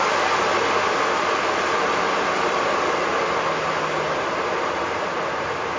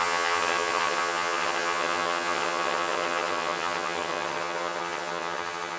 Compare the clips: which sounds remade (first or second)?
second